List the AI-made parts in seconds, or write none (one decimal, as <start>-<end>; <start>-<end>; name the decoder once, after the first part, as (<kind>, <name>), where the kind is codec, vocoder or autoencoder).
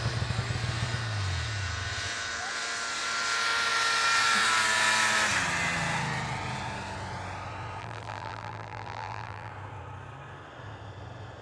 7.8-9.5 (vocoder, BigVGAN v2)